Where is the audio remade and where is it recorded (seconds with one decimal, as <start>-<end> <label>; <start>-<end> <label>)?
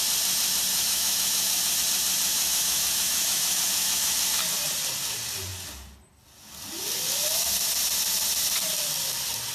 0.0-0.7 recorded; 0.7-1.8 remade; 1.8-2.3 recorded; 2.3-4.4 remade; 4.4-9.5 recorded